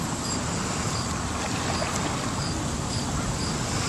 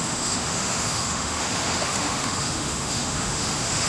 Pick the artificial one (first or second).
second